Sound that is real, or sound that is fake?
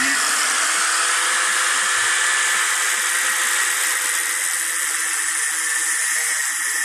real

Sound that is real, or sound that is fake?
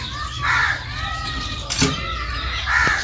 real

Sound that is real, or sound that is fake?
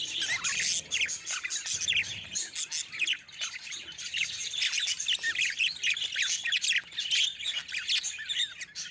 real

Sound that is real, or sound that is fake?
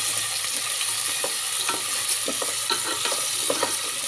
real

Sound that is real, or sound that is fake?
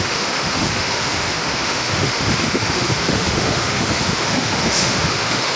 fake